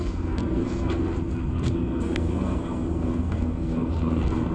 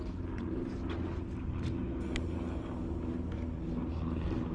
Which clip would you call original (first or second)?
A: second